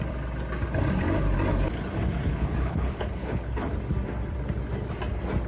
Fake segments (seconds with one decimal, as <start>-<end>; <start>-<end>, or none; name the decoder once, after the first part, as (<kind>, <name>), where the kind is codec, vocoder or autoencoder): 2.3-3.7 (codec, HILCodec)